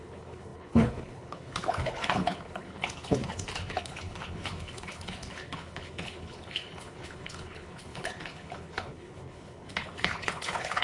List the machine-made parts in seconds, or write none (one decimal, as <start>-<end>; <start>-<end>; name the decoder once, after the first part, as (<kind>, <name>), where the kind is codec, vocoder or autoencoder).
0.0-10.8 (codec, HILCodec)